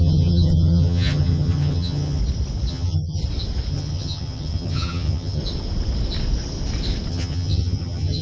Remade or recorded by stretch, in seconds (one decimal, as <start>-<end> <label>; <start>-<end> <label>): 0.0-2.2 remade; 2.2-2.7 recorded; 2.7-3.2 remade; 3.2-3.7 recorded; 3.7-5.4 remade; 5.4-7.1 recorded; 7.1-8.2 remade